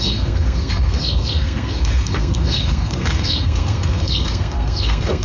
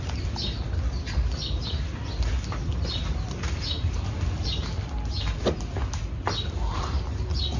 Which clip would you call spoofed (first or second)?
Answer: first